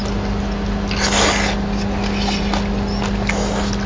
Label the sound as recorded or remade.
recorded